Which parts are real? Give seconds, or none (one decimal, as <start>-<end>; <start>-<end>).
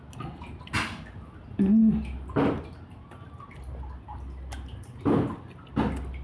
0.0-6.2